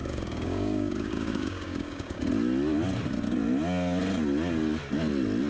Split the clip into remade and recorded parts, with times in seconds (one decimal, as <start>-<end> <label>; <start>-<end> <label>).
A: 0.0-2.2 remade; 2.2-5.5 recorded